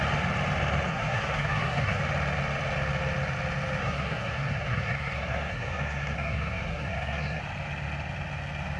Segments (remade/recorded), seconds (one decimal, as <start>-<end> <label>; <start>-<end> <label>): 0.0-0.9 recorded; 0.9-2.0 remade; 2.0-3.8 recorded; 3.8-7.4 remade; 7.4-8.8 recorded